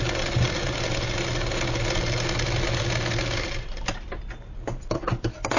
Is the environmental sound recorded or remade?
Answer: recorded